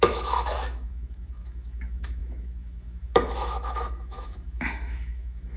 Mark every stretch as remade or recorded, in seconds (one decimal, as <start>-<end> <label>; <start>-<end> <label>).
0.0-5.6 remade

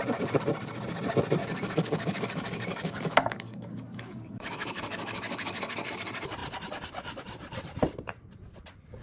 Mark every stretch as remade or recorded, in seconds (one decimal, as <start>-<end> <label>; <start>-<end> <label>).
0.0-1.4 recorded; 1.4-5.9 remade; 5.9-9.0 recorded

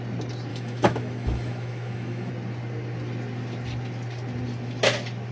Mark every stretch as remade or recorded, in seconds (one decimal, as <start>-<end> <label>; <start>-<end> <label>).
0.0-0.5 recorded; 0.5-2.3 remade; 2.3-5.3 recorded

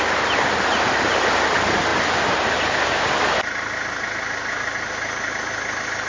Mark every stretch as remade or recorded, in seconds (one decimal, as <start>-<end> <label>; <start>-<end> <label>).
0.0-6.1 recorded